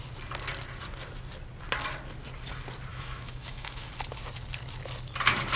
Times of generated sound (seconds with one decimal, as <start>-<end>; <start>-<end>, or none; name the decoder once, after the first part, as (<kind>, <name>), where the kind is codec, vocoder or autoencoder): 2.9-3.9 (autoencoder, DAC-VAE)